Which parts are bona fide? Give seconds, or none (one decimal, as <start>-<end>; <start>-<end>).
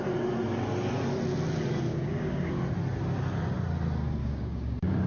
0.0-1.9; 2.5-4.2